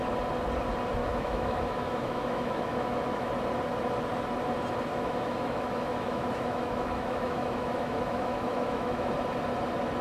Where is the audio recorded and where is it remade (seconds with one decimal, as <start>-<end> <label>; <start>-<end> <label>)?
0.0-1.0 recorded; 1.0-3.3 remade; 3.3-4.9 recorded; 4.9-9.1 remade; 9.1-10.0 recorded